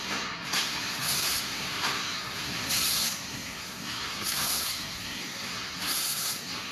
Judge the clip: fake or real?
fake